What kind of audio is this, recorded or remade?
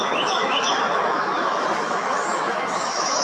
remade